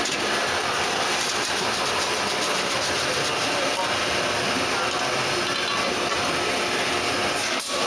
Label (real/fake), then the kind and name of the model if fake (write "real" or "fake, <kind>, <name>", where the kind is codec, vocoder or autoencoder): real